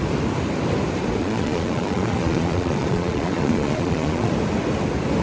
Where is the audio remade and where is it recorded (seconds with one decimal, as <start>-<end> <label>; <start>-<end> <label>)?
0.0-1.2 recorded; 1.2-4.3 remade; 4.3-5.2 recorded